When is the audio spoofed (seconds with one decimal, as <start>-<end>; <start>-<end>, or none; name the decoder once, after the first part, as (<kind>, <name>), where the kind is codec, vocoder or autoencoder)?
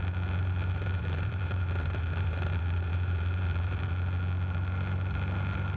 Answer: 0.4-3.9 (vocoder, BigVGAN v2)